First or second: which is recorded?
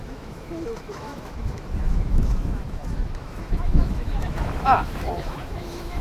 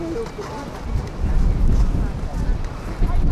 second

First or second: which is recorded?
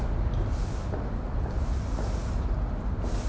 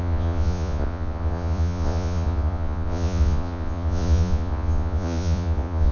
first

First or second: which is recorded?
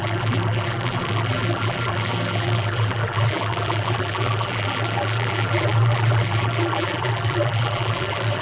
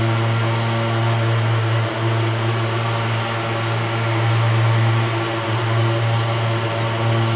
second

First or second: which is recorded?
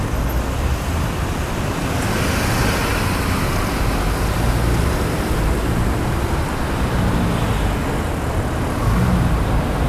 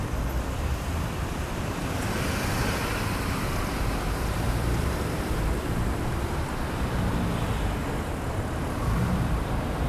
first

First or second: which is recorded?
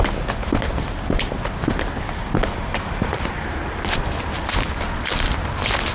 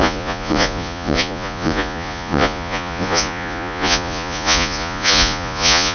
first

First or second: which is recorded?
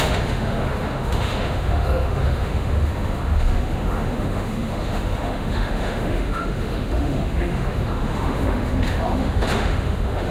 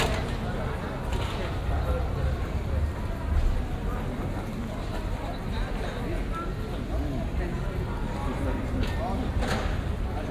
second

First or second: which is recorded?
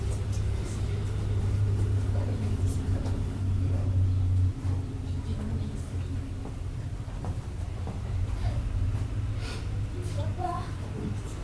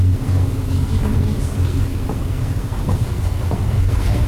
first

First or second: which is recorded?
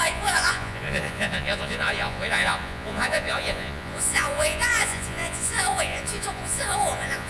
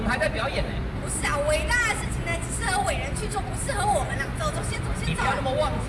second